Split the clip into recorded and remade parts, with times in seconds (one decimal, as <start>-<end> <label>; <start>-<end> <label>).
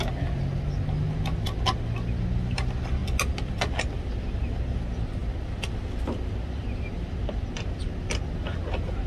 0.0-9.1 recorded